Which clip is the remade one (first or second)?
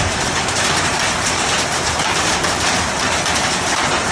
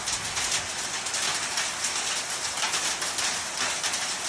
first